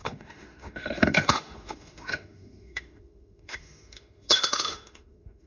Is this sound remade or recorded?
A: remade